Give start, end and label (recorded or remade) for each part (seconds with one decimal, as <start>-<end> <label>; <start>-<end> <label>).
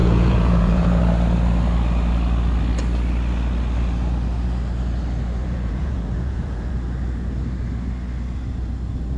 0.0-1.0 remade; 1.0-5.4 recorded; 5.4-6.7 remade; 6.7-9.2 recorded